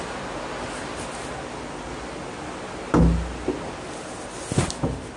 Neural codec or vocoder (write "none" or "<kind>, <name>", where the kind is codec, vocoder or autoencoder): none